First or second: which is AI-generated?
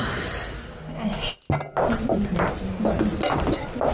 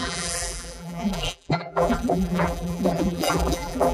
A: second